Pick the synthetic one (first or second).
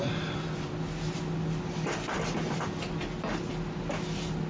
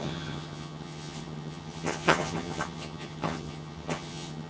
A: second